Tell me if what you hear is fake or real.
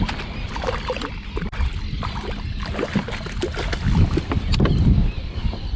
real